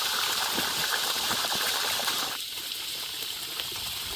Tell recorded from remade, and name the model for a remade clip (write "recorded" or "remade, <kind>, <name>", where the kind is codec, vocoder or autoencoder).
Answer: remade, vocoder, BigVGAN v2